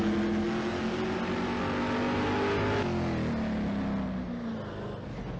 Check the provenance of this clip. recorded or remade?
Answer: recorded